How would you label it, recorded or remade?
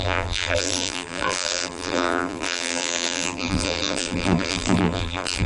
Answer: remade